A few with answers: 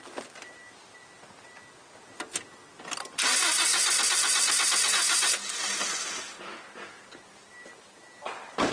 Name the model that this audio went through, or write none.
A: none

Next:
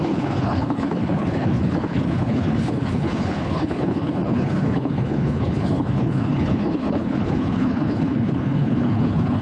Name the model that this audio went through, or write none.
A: codec, HILCodec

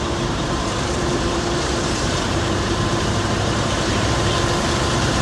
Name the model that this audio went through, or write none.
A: vocoder, BigVGAN v2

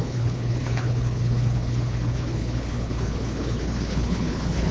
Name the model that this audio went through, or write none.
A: codec, HILCodec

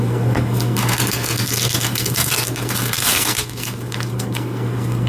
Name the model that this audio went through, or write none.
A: codec, SNAC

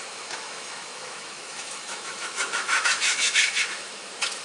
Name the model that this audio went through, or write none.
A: autoencoder, DAC-VAE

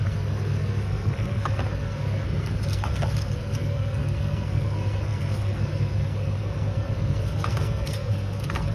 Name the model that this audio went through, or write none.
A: codec, SNAC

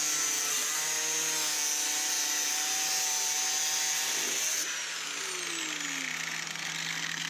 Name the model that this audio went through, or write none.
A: none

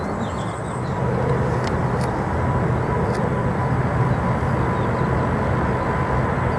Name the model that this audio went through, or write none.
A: none